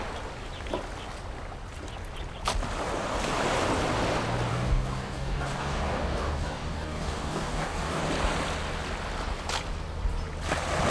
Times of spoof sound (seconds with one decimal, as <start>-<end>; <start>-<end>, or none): 4.5-8.0